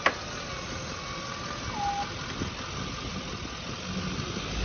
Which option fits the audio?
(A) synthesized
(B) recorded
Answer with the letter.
B